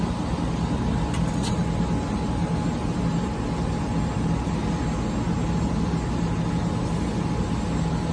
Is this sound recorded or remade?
recorded